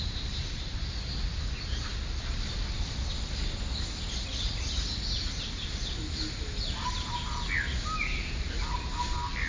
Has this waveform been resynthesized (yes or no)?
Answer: no